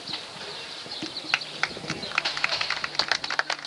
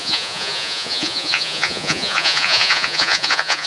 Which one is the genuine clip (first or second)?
first